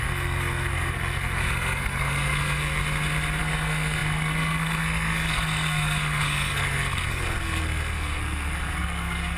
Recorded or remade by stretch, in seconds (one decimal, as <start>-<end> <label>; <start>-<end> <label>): 0.0-2.8 remade; 2.8-3.4 recorded; 3.4-9.4 remade